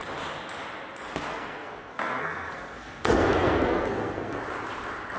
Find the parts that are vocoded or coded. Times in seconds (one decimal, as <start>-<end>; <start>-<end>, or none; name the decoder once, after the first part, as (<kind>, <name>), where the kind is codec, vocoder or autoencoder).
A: 1.3-4.4 (codec, SNAC)